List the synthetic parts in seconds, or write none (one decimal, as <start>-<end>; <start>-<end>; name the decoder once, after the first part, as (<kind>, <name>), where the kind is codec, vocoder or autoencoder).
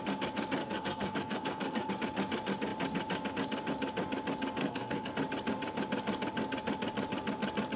0.6-1.9 (codec, SNAC); 4.6-5.1